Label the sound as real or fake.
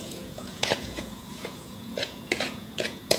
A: fake